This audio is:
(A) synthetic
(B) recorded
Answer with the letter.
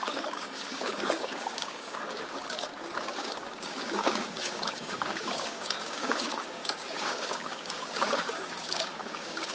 A